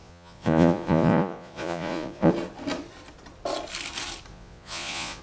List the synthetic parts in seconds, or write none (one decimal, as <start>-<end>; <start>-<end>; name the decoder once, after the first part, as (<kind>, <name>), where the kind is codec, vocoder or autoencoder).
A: 0.0-2.3 (vocoder, Vocos); 4.3-5.2